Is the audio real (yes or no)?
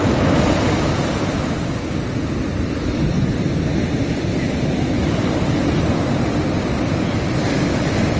yes